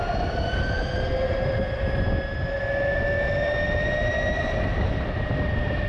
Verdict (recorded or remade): recorded